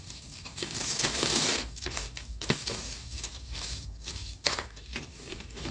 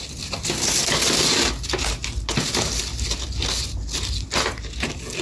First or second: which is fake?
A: first